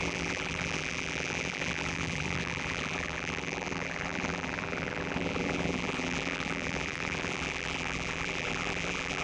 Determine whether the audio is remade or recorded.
remade